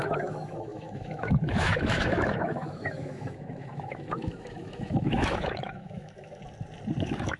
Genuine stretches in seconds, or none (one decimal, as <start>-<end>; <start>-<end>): 6.4-7.0